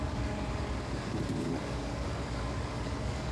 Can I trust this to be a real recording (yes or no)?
no